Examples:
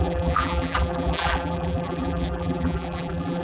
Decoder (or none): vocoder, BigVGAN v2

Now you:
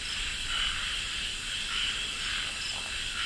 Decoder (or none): none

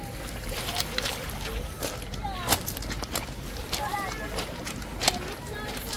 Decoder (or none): vocoder, BigVGAN v2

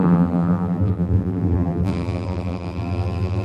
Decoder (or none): vocoder, BigVGAN v2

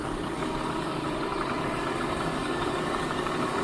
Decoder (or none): codec, DAC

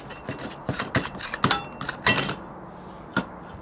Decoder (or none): none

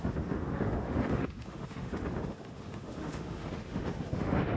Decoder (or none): autoencoder, DAC-VAE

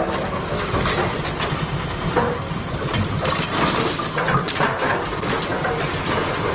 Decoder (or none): none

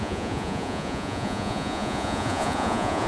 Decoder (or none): vocoder, Vocos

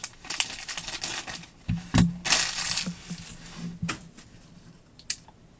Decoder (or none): none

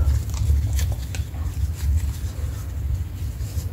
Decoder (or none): none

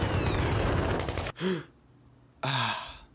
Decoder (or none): none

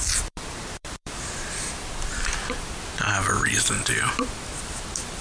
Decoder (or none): vocoder, BigVGAN v2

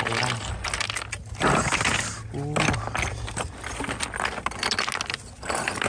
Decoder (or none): none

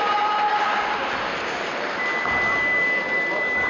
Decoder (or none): none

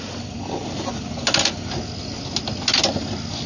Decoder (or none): none